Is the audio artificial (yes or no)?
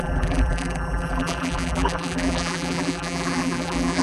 yes